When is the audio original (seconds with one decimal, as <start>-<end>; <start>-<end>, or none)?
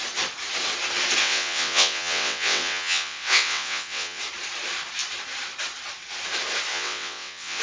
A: 0.0-1.2; 4.2-6.7